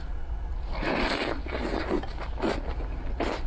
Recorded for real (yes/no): yes